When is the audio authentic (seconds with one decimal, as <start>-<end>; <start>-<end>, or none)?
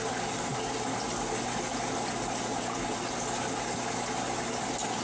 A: 0.0-5.0